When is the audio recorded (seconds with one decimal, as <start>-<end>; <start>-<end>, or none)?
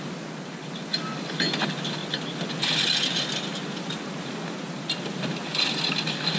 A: 0.0-6.4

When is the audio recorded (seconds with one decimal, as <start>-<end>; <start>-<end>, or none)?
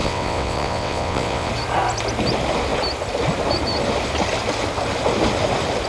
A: 1.5-5.9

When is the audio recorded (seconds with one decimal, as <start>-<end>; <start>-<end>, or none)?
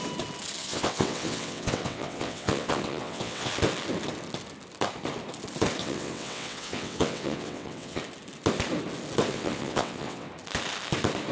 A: 0.0-0.6; 3.5-5.8; 8.0-9.3; 10.3-11.3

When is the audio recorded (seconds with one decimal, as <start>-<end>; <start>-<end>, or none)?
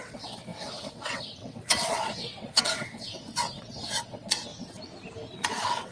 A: 4.5-5.5